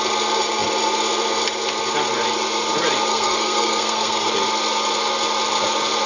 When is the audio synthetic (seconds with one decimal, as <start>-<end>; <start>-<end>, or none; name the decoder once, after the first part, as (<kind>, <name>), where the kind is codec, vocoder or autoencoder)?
3.1-4.3 (codec, SNAC)